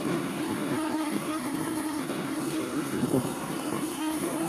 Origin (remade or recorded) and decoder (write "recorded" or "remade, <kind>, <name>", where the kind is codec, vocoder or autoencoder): remade, codec, SNAC